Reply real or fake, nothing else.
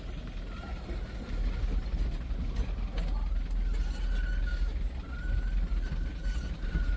real